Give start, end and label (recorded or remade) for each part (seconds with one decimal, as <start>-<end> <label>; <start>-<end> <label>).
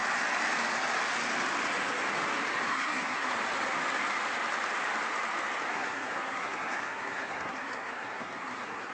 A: 0.0-2.7 recorded; 2.7-3.3 remade; 3.3-5.7 recorded; 5.7-8.9 remade